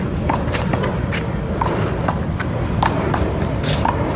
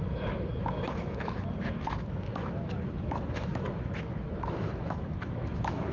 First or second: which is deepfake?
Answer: second